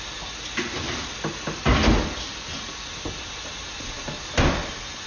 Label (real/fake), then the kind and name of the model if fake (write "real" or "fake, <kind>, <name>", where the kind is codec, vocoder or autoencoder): real